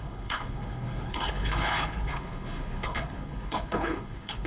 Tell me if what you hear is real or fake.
fake